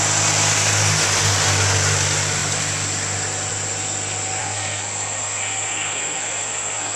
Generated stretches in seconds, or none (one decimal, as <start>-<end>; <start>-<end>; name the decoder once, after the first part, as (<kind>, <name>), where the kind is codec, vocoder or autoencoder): 4.4-7.0 (codec, SNAC)